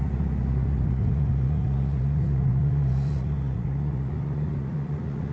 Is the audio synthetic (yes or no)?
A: yes